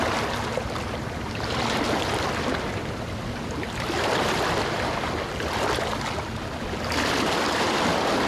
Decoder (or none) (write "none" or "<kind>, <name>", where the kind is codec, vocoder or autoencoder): none